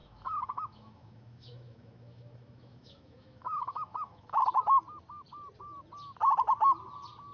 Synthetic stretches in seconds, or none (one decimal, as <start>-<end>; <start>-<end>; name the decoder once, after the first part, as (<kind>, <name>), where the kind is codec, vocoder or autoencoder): 0.0-4.4 (autoencoder, DAC-VAE)